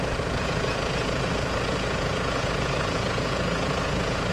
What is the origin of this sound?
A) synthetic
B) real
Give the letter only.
A